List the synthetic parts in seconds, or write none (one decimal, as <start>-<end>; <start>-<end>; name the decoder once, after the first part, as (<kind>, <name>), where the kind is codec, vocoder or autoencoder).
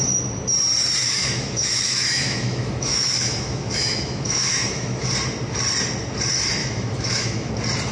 1.0-5.1 (autoencoder, DAC-VAE); 6.6-7.5